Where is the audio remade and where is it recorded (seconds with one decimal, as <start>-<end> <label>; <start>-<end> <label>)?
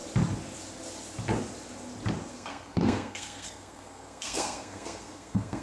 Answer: 0.0-2.3 recorded; 2.3-5.6 remade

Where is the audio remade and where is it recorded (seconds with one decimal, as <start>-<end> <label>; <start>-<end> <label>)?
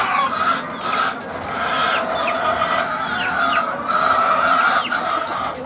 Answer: 0.0-5.7 recorded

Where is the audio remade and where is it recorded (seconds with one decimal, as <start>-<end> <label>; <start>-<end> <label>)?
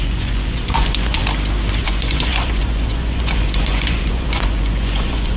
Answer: 0.0-1.2 remade; 1.2-1.8 recorded; 1.8-5.4 remade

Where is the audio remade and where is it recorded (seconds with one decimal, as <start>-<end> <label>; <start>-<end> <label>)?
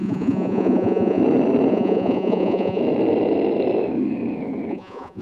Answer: 0.0-1.2 remade; 1.2-1.7 recorded; 1.7-2.8 remade; 2.8-4.7 recorded; 4.7-5.2 remade